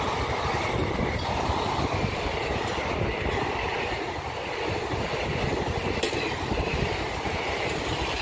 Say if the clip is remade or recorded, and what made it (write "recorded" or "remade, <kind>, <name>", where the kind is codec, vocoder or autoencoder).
recorded